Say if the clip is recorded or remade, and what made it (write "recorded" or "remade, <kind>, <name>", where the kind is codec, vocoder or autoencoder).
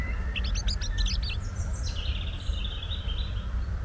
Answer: recorded